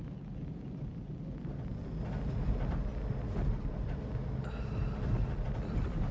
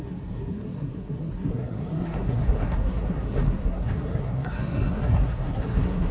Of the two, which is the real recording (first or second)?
first